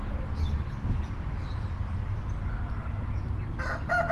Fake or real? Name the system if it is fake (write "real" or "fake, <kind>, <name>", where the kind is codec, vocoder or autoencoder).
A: real